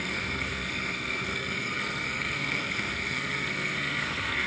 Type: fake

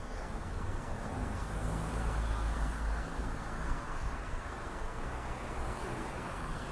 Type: fake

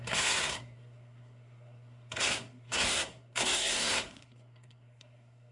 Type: fake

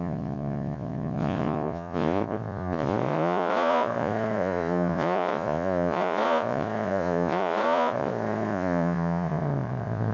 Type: fake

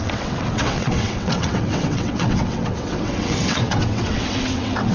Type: fake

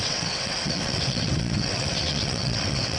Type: fake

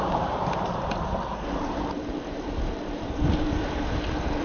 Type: fake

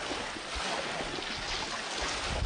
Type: real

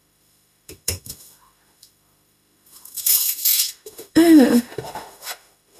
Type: fake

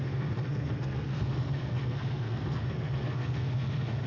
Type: fake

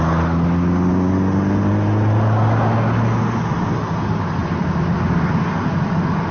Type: real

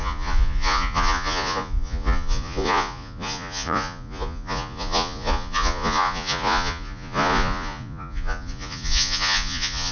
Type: fake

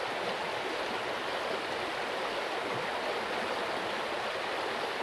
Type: real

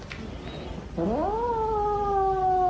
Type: real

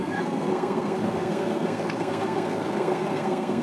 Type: fake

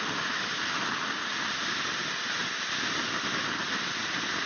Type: real